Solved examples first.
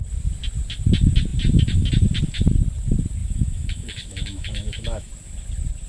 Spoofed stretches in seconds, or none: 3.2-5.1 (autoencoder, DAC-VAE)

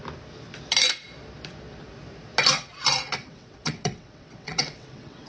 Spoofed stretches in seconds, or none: 3.2-5.3 (vocoder, WaveNeXt)

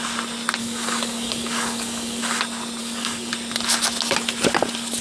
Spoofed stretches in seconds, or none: 0.6-2.4 (codec, DAC); 2.8-3.3

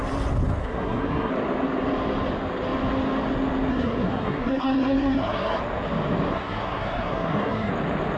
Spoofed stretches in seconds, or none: 0.6-1.3 (codec, SNAC); 3.7-5.6; 6.3-7.7

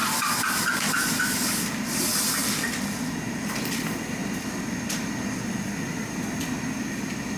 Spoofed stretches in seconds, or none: 0.9-2.4 (vocoder, BigVGAN v2); 3.7-7.4

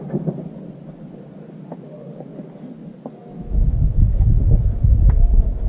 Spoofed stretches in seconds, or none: 3.2-4.5 (autoencoder, DAC-VAE)

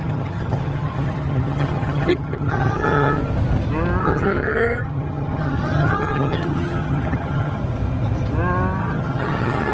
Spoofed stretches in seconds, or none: 0.0-3.2 (vocoder, HiFi-GAN); 4.0-7.6; 8.8-9.7

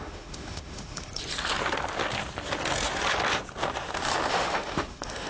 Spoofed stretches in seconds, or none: 0.0-1.1 (autoencoder, DAC-VAE); 4.3-5.3